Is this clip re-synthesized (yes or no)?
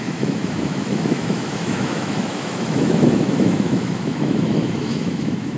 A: yes